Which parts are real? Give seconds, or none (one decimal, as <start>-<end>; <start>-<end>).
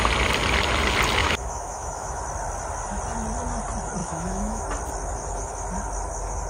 0.0-1.2; 2.2-4.0; 4.6-6.5